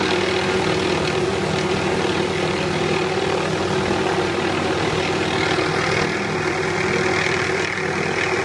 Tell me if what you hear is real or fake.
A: real